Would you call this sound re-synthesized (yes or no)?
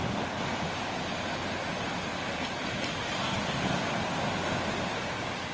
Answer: yes